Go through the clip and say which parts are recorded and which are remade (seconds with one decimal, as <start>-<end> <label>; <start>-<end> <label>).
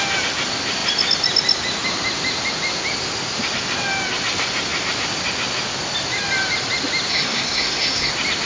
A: 0.0-7.1 recorded; 7.1-8.1 remade; 8.1-8.5 recorded